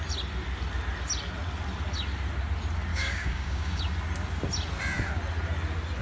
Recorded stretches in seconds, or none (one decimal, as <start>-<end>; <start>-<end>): 0.0-2.9; 3.8-6.0